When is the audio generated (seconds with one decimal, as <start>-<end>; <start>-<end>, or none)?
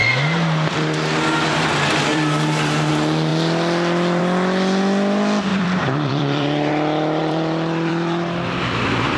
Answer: 0.0-2.9; 5.5-6.7; 7.2-9.2